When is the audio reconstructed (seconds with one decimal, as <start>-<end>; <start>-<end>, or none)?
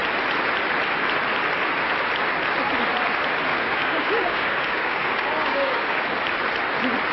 3.5-6.0